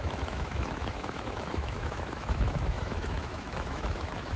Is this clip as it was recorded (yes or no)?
no